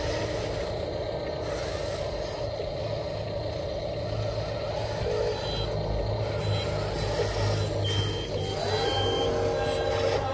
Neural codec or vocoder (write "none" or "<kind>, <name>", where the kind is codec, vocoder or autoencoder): none